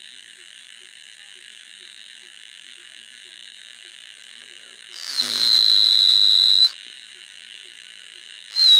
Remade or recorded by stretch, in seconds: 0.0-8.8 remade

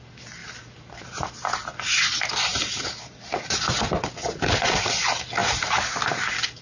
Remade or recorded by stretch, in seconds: 0.0-2.5 recorded; 2.5-3.1 remade; 3.1-5.4 recorded; 5.4-6.6 remade

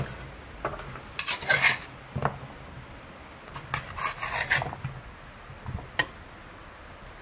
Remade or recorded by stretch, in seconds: 0.0-7.2 recorded

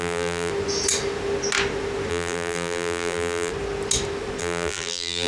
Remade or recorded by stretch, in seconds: 0.0-0.5 remade; 0.5-2.1 recorded; 2.1-3.5 remade; 3.5-4.4 recorded; 4.4-5.3 remade

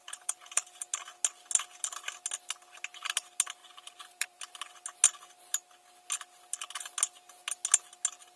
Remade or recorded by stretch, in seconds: 0.0-0.8 remade; 0.8-3.6 recorded; 3.6-4.4 remade; 4.4-8.4 recorded

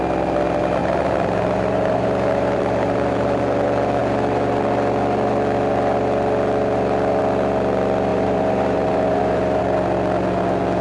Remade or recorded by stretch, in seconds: 0.0-0.8 recorded; 0.8-3.4 remade; 3.4-8.1 recorded; 8.1-9.6 remade; 9.6-10.8 recorded